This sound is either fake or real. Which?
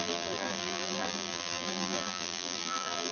fake